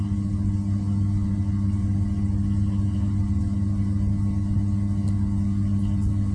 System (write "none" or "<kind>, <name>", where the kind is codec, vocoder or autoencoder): none